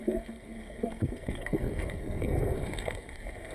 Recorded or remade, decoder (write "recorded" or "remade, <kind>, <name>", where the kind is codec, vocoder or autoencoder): remade, codec, SNAC